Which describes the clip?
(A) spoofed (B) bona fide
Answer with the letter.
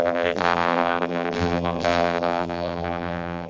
A